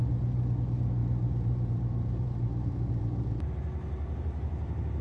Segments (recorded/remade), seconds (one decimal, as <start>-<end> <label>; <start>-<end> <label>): 0.0-1.0 recorded; 1.0-3.5 remade; 3.5-5.0 recorded